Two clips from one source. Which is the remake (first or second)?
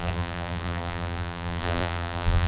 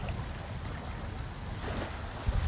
first